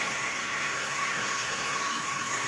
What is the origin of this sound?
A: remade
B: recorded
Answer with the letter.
A